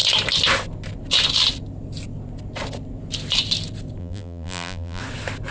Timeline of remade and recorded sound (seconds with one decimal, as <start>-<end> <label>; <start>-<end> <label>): 0.0-4.0 recorded; 4.0-5.0 remade; 5.0-5.5 recorded